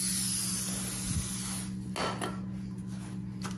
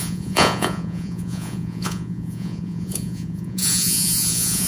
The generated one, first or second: second